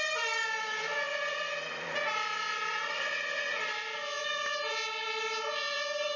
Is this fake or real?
fake